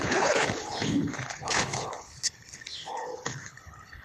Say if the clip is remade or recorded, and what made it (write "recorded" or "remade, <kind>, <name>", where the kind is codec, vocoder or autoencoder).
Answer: remade, codec, HILCodec